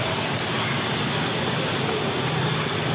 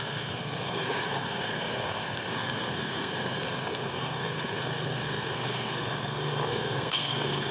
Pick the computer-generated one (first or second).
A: second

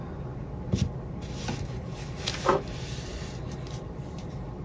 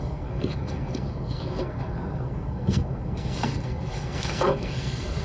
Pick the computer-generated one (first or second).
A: second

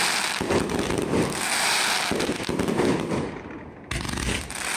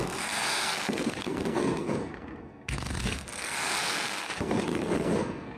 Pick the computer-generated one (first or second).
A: second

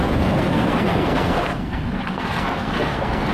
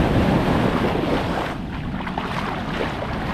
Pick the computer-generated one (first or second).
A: first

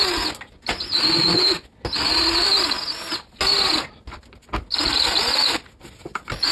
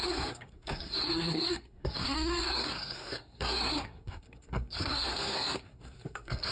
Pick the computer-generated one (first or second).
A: second